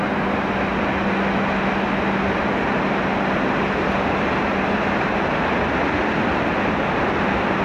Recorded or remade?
recorded